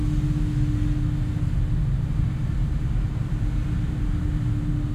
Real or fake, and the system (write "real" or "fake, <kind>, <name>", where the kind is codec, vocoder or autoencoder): real